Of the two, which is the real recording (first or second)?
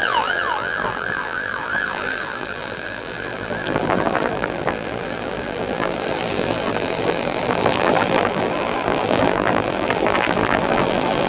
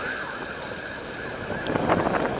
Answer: second